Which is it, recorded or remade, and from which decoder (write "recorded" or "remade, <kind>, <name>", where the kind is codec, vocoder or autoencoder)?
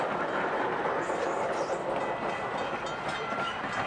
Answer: recorded